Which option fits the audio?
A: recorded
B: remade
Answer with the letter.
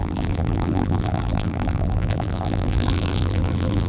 B